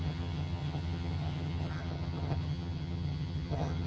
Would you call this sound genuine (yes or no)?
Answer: no